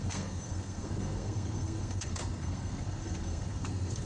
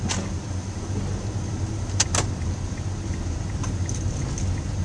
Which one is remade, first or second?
first